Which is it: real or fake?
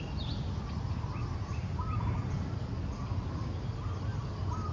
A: real